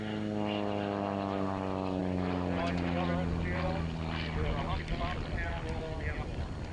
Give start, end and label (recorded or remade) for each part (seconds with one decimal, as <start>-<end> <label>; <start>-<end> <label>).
0.0-6.7 recorded